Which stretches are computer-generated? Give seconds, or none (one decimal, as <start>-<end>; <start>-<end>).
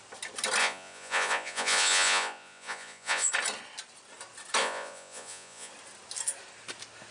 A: 0.6-3.3; 4.6-5.7